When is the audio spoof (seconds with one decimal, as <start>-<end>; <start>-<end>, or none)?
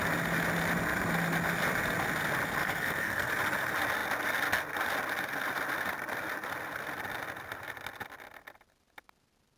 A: 2.6-3.3